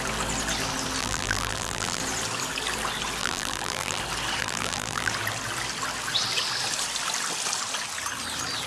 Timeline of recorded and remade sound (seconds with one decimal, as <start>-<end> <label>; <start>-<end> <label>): 0.0-1.0 recorded; 1.0-2.0 remade; 2.0-3.2 recorded; 3.2-4.0 remade; 4.0-4.4 recorded; 4.4-5.1 remade; 5.1-8.7 recorded